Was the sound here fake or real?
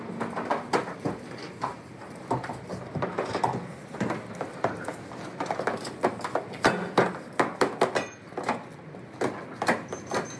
real